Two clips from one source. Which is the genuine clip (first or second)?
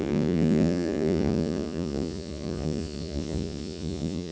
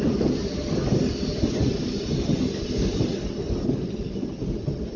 second